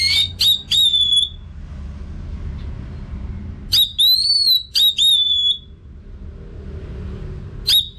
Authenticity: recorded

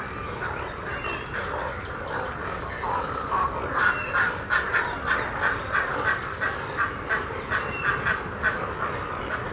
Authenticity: recorded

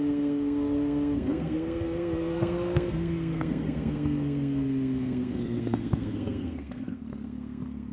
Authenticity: remade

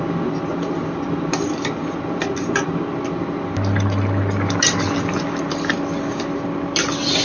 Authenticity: recorded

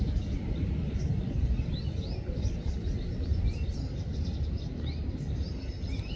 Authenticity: recorded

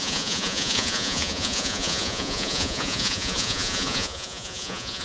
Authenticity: remade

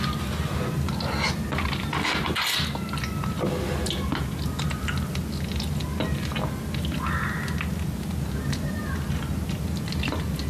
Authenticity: recorded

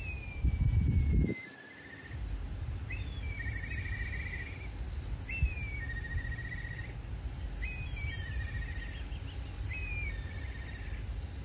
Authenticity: recorded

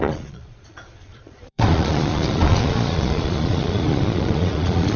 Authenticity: remade